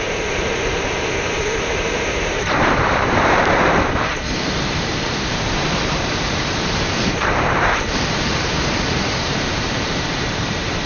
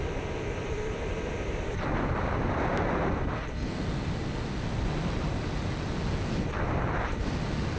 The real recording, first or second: second